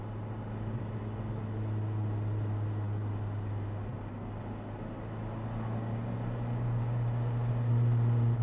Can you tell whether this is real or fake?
real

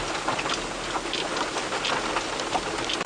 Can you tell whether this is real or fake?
real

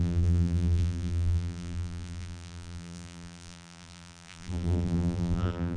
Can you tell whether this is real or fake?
fake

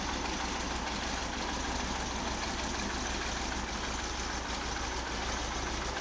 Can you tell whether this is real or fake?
real